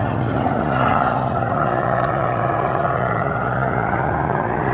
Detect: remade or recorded remade